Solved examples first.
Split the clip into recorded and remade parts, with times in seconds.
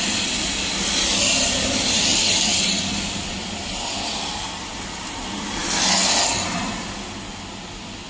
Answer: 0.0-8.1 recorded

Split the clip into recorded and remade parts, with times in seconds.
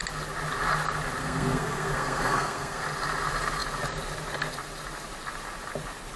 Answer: 0.0-1.2 recorded; 1.2-2.8 remade; 2.8-6.2 recorded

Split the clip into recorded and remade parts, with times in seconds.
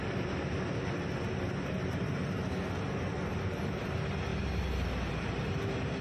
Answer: 0.0-6.0 recorded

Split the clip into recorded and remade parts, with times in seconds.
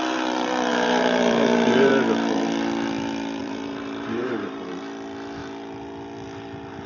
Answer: 0.0-0.7 recorded; 0.7-1.9 remade; 1.9-3.4 recorded; 3.4-4.7 remade; 4.7-6.9 recorded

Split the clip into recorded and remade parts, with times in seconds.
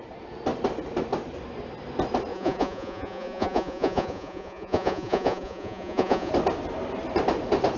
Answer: 0.0-2.3 recorded; 2.3-6.3 remade; 6.3-7.8 recorded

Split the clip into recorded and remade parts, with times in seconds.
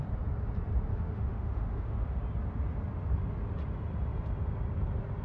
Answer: 0.0-0.9 recorded; 0.9-2.2 remade; 2.2-5.2 recorded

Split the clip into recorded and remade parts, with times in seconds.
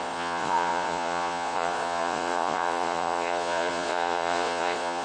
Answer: 0.0-5.0 remade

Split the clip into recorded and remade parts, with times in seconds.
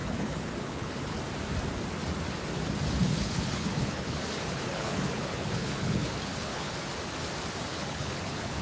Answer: 0.0-1.2 remade; 1.2-3.0 recorded; 3.0-6.8 remade; 6.8-7.7 recorded; 7.7-8.6 remade